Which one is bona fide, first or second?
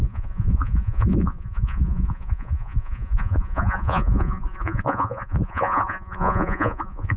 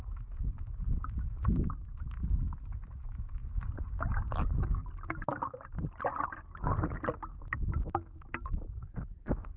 second